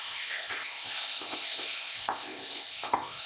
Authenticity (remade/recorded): remade